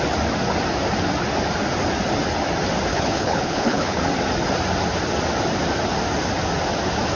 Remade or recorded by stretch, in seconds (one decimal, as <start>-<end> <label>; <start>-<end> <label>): 0.0-2.9 recorded; 2.9-4.0 remade; 4.0-7.2 recorded